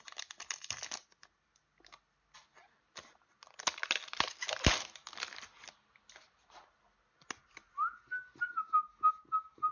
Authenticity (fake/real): real